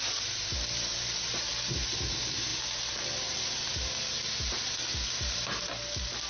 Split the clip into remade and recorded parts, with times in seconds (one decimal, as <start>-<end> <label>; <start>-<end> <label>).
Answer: 0.0-0.9 recorded; 0.9-1.5 remade; 1.5-2.5 recorded; 2.5-4.3 remade; 4.3-6.3 recorded